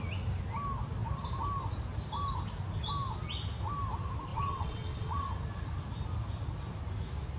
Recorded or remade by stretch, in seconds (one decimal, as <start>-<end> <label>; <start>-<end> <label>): 0.0-4.3 recorded; 4.3-5.3 remade; 5.3-7.4 recorded